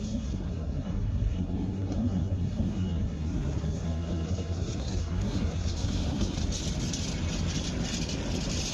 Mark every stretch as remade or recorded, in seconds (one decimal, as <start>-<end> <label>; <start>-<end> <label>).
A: 0.0-6.4 remade; 6.4-8.7 recorded